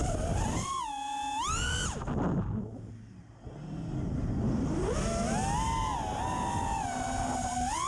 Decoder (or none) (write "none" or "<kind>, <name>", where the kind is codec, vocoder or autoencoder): none